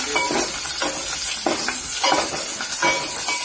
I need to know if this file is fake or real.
real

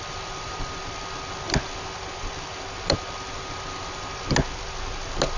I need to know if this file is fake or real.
real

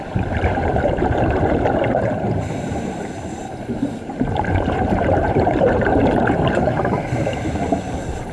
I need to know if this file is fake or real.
fake